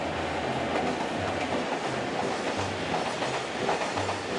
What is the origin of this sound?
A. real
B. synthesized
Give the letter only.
A